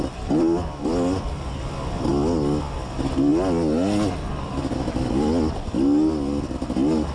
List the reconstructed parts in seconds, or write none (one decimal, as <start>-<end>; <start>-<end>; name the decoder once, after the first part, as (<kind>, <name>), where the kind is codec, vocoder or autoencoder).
none